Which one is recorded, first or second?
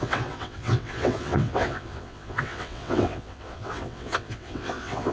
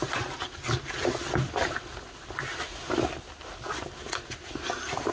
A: second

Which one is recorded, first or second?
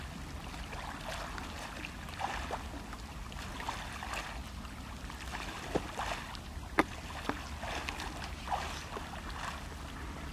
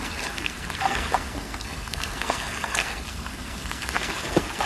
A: first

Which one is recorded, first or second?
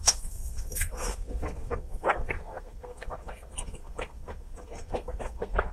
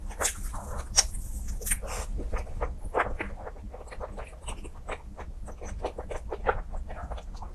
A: second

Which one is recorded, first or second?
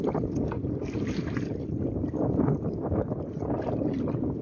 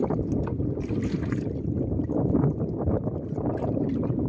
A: first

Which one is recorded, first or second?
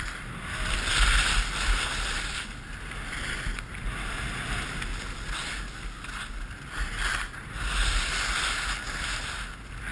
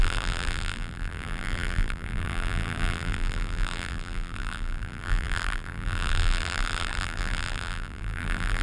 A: first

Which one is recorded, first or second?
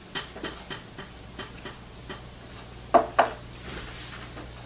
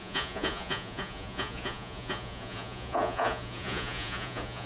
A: first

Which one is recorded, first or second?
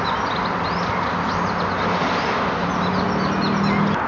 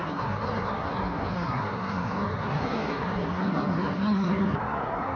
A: first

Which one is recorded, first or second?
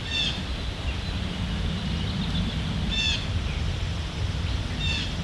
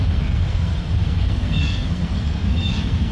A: first